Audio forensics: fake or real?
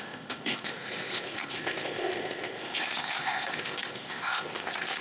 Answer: fake